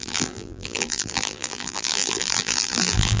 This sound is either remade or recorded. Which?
remade